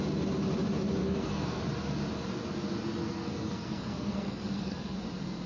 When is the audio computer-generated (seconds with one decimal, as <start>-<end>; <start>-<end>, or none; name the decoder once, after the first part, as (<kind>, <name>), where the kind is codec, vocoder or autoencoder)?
1.0-1.7 (codec, SNAC); 3.0-5.0